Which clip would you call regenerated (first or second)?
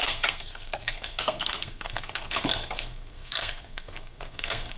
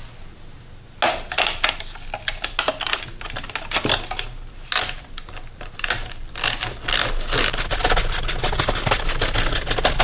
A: first